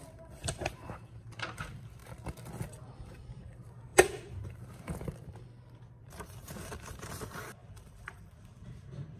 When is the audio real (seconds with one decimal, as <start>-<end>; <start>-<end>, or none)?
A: 2.0-2.7